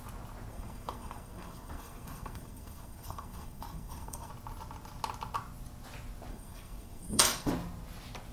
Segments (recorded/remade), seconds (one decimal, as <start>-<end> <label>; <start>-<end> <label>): 0.0-0.5 recorded; 0.5-4.3 remade; 4.3-6.3 recorded; 6.3-7.5 remade; 7.5-8.3 recorded